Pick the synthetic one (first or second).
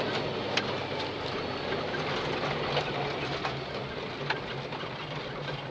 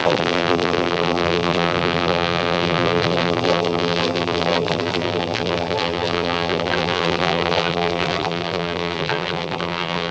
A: second